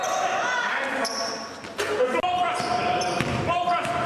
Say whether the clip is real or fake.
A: real